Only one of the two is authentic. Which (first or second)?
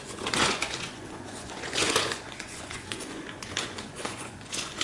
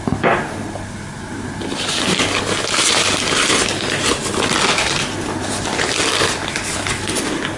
second